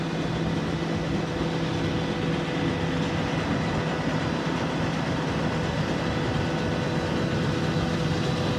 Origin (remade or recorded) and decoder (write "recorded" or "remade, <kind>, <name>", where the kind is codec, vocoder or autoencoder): recorded